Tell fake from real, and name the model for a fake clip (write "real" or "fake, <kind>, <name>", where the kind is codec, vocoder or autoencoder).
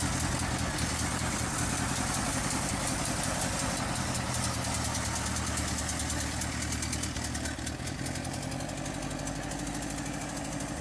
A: real